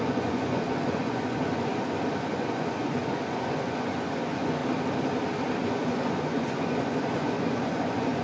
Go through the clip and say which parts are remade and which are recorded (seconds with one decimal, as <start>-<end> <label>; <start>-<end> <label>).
0.0-1.7 remade; 1.7-2.3 recorded; 2.3-4.6 remade; 4.6-5.6 recorded; 5.6-8.2 remade